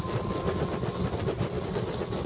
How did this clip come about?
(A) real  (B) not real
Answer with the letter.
A